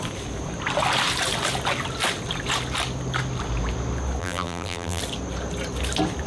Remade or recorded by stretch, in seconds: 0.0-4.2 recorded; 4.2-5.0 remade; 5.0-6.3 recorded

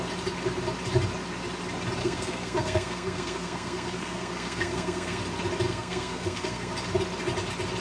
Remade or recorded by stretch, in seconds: 0.0-2.0 recorded; 2.0-5.2 remade; 5.2-5.7 recorded; 5.7-6.7 remade; 6.7-7.8 recorded

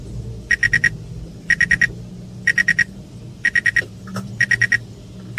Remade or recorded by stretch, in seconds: 0.0-5.4 recorded

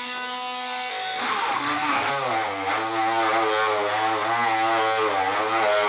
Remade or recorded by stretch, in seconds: 0.0-0.9 recorded; 0.9-2.1 remade; 2.1-5.9 recorded

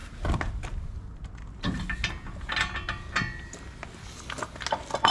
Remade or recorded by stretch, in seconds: 0.0-5.1 recorded

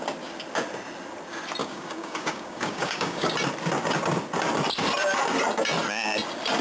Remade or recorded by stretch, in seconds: 0.0-1.6 recorded; 1.6-3.3 remade; 3.3-6.6 recorded